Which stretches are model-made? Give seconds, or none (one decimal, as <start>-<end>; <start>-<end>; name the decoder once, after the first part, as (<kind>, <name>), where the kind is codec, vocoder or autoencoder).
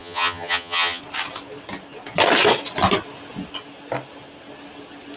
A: 0.0-1.0 (vocoder, HiFi-GAN)